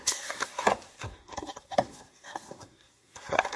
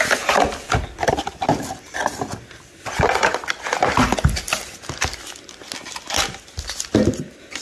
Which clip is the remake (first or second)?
first